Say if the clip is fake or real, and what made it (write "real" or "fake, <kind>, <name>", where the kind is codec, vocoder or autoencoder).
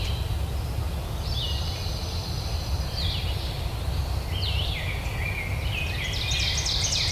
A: real